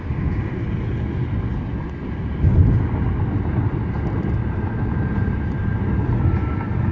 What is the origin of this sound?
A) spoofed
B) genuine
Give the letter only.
B